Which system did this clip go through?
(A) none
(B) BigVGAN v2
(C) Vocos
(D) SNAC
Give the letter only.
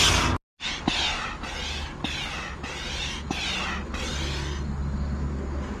A